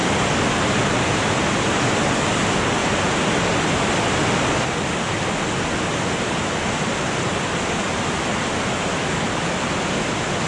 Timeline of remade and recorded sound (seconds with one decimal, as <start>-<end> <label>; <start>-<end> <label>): 0.0-10.5 recorded